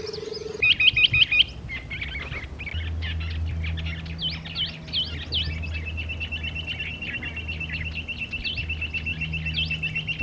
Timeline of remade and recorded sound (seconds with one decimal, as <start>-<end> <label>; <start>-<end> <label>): 0.0-10.2 recorded

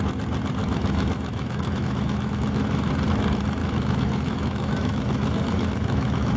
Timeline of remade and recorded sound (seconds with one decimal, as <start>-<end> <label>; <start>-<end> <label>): 0.0-0.6 recorded; 0.6-2.9 remade; 2.9-3.6 recorded; 3.6-6.4 remade

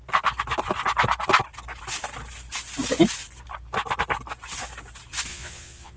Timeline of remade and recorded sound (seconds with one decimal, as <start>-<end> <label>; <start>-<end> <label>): 0.0-5.3 recorded; 5.3-6.0 remade

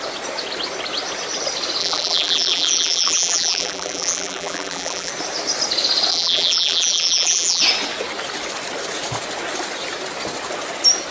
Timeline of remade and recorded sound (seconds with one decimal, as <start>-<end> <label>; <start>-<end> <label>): 0.0-1.8 recorded; 1.8-5.1 remade; 5.1-6.1 recorded; 6.1-7.6 remade; 7.6-11.1 recorded

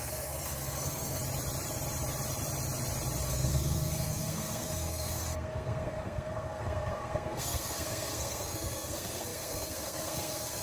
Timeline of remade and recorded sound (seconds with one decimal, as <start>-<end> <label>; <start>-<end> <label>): 0.0-1.2 remade; 1.2-3.3 recorded; 3.3-10.6 remade

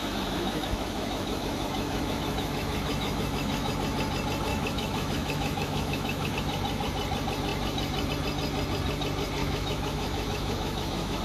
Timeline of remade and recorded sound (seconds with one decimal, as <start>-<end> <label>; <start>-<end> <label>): 0.0-3.7 remade; 3.7-4.5 recorded; 4.5-6.3 remade; 6.3-9.4 recorded; 9.4-11.2 remade